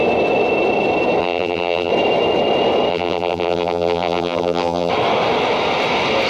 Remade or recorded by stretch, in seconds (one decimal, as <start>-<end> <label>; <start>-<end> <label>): 0.0-1.2 recorded; 1.2-1.9 remade; 1.9-2.9 recorded; 2.9-4.9 remade; 4.9-6.3 recorded

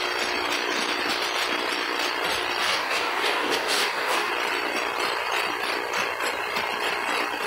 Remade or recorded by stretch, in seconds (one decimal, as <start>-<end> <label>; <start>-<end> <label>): 0.0-2.6 recorded; 2.6-4.3 remade; 4.3-7.5 recorded

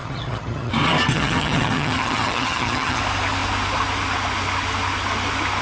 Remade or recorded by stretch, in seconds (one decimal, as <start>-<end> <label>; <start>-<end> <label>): 0.0-0.7 remade; 0.7-1.1 recorded; 1.1-3.0 remade; 3.0-5.6 recorded

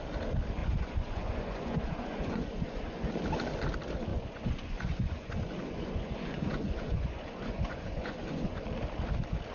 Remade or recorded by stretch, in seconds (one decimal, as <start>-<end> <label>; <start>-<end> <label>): 0.0-0.6 recorded; 0.6-3.1 remade; 3.1-4.1 recorded; 4.1-8.6 remade; 8.6-9.5 recorded

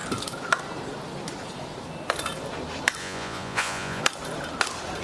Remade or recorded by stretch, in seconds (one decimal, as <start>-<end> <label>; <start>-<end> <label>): 0.0-3.0 recorded; 3.0-4.0 remade; 4.0-5.0 recorded

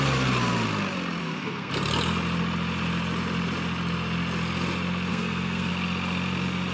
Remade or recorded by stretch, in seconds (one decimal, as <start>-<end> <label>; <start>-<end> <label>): 0.0-1.2 recorded; 1.2-1.7 remade; 1.7-5.1 recorded; 5.1-5.7 remade; 5.7-6.7 recorded

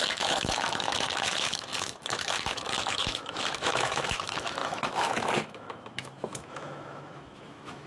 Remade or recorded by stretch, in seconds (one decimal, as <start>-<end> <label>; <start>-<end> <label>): 0.0-7.9 remade